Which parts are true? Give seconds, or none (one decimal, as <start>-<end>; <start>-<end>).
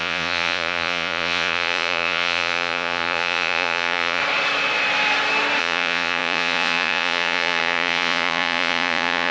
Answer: 4.2-5.6